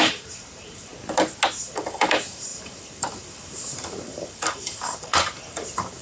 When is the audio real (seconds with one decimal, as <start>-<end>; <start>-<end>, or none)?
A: 0.9-1.6

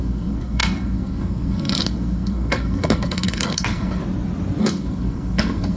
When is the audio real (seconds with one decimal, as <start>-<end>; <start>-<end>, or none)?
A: 4.0-4.6